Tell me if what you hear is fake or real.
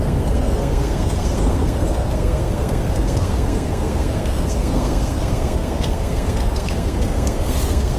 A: fake